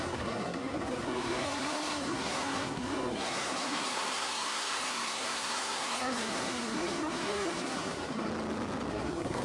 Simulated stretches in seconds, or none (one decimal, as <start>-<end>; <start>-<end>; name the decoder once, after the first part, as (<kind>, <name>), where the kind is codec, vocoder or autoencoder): 0.0-8.3 (codec, SNAC); 8.9-9.4